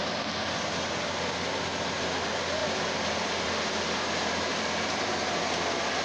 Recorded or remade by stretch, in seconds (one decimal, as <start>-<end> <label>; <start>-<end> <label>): 0.0-2.6 recorded; 2.6-5.4 remade; 5.4-6.0 recorded